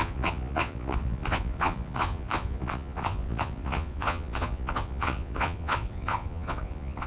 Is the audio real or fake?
fake